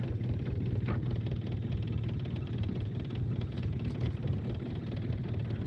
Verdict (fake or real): real